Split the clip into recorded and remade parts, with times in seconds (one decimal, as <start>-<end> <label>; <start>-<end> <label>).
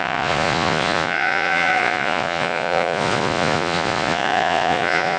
0.0-5.2 remade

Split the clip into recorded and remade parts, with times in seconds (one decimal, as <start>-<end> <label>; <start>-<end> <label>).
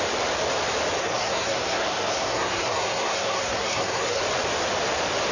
0.0-1.0 recorded; 1.0-4.2 remade; 4.2-5.3 recorded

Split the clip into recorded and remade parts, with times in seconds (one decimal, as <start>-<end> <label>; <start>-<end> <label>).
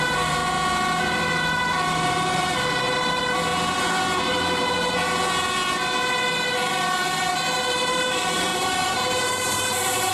0.0-0.4 remade; 0.4-1.4 recorded; 1.4-3.5 remade; 3.5-6.7 recorded; 6.7-7.3 remade; 7.3-7.9 recorded; 7.9-10.1 remade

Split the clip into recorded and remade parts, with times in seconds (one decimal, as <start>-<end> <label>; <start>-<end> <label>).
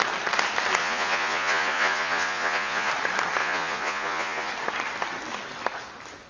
0.0-0.8 recorded; 0.8-2.9 remade; 2.9-3.4 recorded; 3.4-4.5 remade; 4.5-6.3 recorded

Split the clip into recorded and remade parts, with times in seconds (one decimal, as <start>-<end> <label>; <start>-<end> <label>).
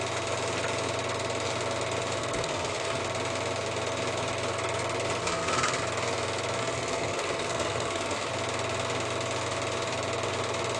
0.0-2.2 recorded; 2.2-3.0 remade; 3.0-5.2 recorded; 5.2-5.8 remade; 5.8-6.6 recorded; 6.6-8.3 remade; 8.3-10.8 recorded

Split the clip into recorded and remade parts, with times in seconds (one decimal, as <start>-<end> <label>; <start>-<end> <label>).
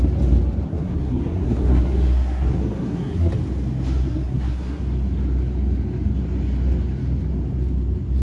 0.0-0.7 recorded; 0.7-3.3 remade; 3.3-4.0 recorded; 4.0-4.8 remade; 4.8-8.2 recorded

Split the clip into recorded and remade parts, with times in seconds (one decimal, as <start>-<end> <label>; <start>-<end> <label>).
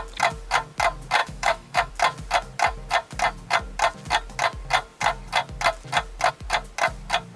0.0-1.2 recorded; 1.2-1.9 remade; 1.9-7.4 recorded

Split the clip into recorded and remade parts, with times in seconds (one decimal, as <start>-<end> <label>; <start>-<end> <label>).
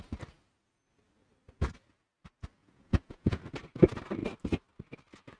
0.0-2.6 recorded; 2.6-3.4 remade; 3.4-5.4 recorded